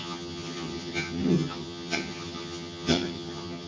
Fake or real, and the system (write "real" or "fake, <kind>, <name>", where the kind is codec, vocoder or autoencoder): fake, vocoder, HiFi-GAN